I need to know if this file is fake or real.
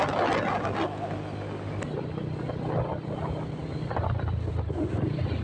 real